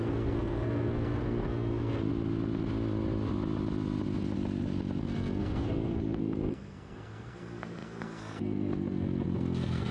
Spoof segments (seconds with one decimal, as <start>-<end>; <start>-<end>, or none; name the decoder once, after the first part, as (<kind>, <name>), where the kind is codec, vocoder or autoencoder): 0.0-2.1 (codec, SNAC); 5.0-9.9